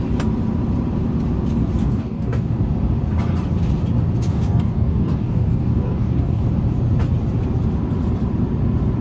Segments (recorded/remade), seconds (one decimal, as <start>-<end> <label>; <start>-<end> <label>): 0.0-1.8 recorded; 1.8-2.6 remade; 2.6-4.3 recorded; 4.3-6.4 remade; 6.4-9.0 recorded